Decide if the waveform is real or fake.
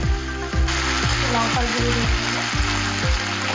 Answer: real